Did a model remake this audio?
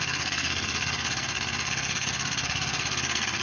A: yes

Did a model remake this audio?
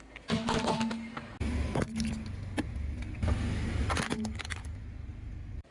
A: no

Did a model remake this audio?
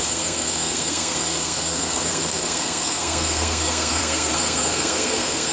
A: yes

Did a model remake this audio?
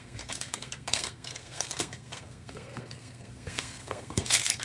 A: yes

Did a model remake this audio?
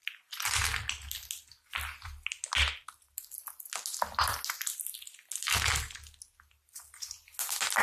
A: no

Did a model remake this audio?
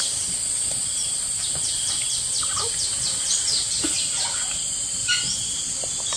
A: no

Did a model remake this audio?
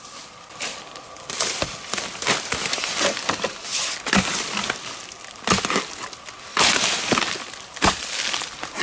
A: no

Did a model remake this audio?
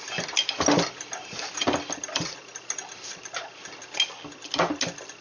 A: no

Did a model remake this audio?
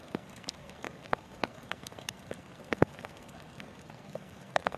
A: yes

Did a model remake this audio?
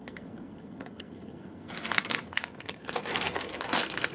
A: yes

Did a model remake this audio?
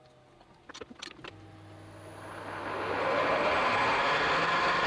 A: no